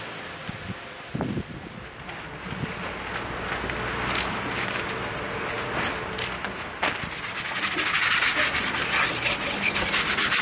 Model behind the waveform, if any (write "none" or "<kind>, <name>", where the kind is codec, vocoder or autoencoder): none